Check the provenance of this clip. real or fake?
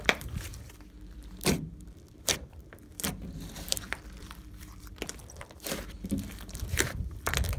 fake